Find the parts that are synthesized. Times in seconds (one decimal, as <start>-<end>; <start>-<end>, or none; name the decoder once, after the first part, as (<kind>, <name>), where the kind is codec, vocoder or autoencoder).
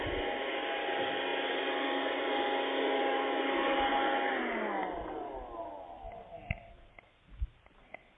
none